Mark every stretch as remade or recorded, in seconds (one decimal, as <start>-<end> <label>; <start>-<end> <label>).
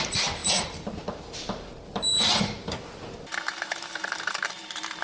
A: 0.0-5.0 remade